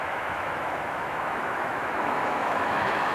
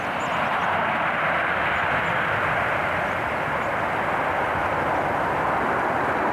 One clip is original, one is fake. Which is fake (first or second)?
first